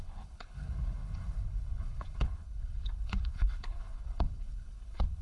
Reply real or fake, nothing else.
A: fake